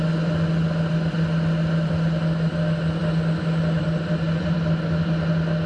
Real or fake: real